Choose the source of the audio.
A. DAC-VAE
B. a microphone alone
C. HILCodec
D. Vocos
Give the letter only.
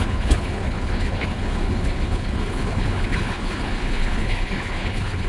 C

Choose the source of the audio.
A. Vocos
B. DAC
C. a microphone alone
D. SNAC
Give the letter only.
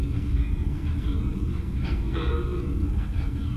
D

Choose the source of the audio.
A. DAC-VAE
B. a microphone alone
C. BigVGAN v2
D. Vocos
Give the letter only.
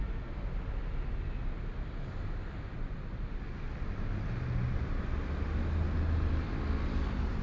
B